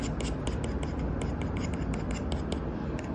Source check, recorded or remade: recorded